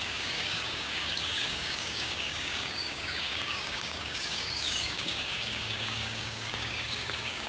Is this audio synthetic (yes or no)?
yes